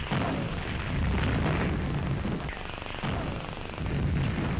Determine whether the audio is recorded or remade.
recorded